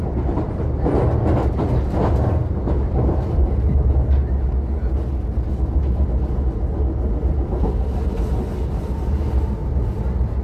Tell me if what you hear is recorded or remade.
recorded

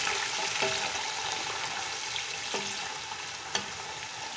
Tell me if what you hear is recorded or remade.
recorded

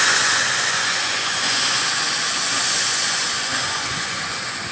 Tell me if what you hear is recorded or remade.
remade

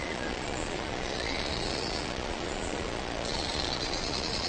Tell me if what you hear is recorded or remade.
remade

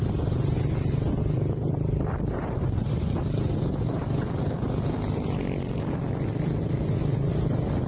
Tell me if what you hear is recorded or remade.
recorded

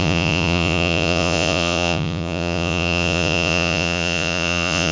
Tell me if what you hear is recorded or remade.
remade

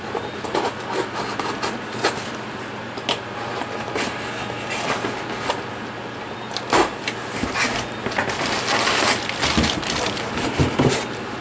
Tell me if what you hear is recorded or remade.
recorded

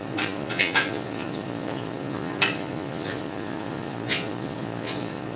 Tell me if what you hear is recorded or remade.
remade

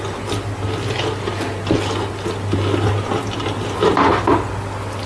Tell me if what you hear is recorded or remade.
recorded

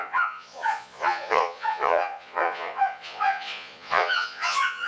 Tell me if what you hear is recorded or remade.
remade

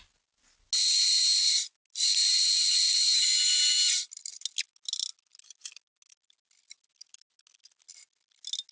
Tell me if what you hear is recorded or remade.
recorded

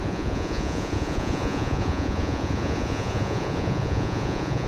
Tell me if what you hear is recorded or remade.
remade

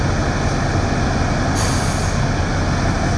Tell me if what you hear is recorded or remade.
recorded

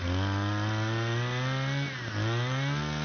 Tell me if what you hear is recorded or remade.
recorded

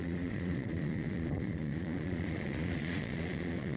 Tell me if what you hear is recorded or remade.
remade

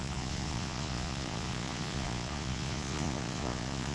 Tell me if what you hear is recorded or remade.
remade